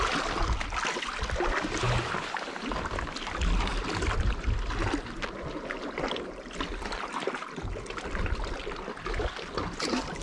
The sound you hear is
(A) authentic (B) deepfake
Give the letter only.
A